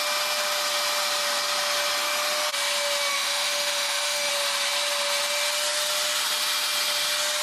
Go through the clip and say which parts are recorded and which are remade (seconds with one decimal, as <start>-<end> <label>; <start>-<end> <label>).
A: 0.0-3.1 recorded; 3.1-4.3 remade; 4.3-7.4 recorded